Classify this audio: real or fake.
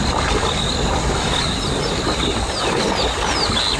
real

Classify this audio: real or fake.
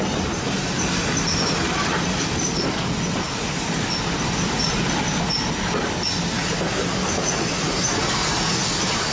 real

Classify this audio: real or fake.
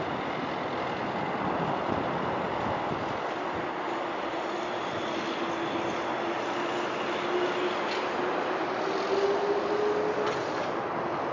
real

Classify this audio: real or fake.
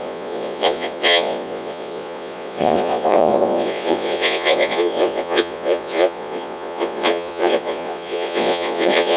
fake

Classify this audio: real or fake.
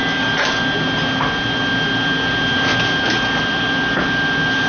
real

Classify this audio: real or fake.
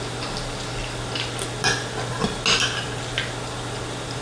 real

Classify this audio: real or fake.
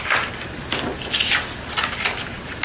real